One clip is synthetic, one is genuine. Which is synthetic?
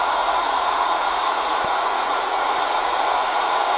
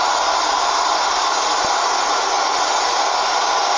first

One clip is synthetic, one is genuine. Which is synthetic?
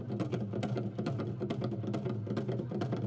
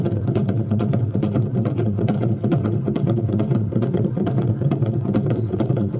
second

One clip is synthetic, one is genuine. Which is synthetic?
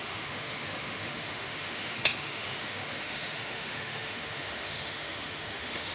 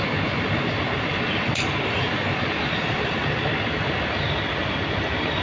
first